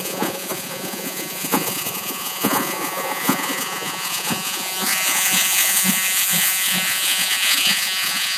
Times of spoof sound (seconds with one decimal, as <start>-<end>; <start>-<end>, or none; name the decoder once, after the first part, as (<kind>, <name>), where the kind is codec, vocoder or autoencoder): 0.0-8.4 (vocoder, Vocos)